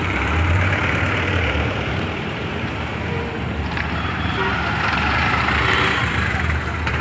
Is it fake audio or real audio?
fake